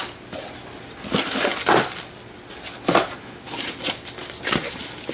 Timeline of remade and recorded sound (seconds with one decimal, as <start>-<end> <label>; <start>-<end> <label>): 0.0-5.1 recorded